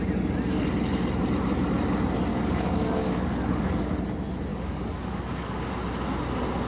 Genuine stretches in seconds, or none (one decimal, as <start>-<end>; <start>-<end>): 0.0-2.3; 3.9-4.5; 5.7-6.7